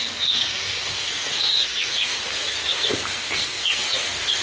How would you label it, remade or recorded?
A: remade